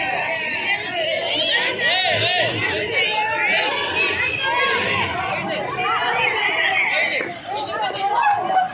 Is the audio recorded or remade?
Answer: recorded